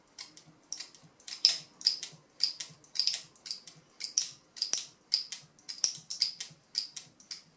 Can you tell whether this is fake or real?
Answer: real